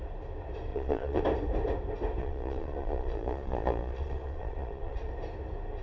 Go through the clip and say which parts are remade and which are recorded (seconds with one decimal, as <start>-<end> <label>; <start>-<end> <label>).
0.0-0.7 recorded; 0.7-1.2 remade; 1.2-2.2 recorded; 2.2-5.1 remade; 5.1-5.8 recorded